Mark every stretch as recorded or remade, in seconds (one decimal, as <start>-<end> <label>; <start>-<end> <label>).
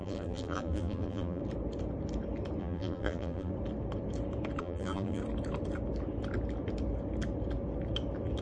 0.0-1.4 remade; 1.4-2.6 recorded; 2.6-3.5 remade; 3.5-4.6 recorded; 4.6-5.2 remade; 5.2-8.4 recorded